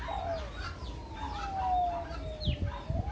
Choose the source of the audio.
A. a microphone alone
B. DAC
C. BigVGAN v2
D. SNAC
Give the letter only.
A